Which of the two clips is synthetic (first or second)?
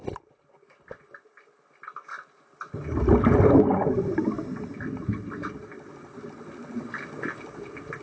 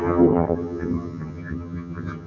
second